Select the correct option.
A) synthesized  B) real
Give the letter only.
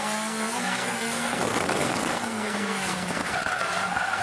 A